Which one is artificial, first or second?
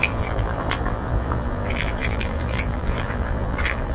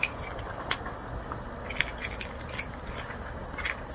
first